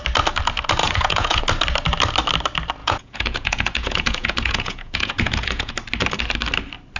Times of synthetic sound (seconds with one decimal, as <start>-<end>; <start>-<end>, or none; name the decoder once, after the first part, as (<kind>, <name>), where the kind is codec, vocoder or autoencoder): 0.8-1.4 (vocoder, Vocos); 2.8-5.7